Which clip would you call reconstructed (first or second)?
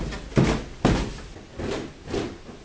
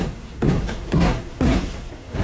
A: second